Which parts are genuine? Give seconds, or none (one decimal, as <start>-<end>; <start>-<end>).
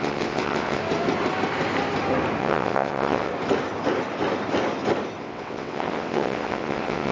0.8-2.4; 3.3-5.2